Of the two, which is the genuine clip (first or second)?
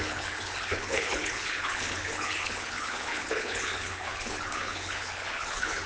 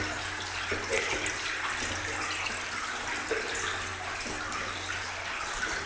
second